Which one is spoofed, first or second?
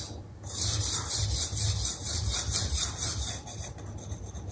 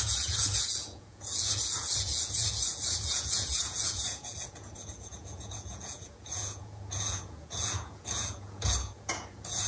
second